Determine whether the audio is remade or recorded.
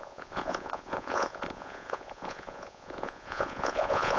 remade